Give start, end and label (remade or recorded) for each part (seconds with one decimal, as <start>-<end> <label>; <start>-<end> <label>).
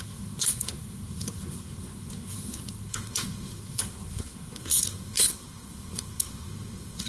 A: 0.0-7.1 remade